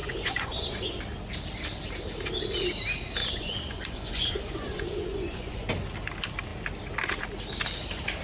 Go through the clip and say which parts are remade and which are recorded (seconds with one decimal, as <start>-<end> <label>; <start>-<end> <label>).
0.0-1.0 remade; 1.0-3.2 recorded; 3.2-5.7 remade; 5.7-8.2 recorded